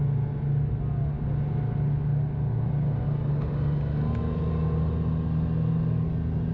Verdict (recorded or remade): recorded